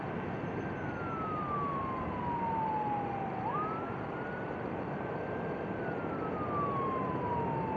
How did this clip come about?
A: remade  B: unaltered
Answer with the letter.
B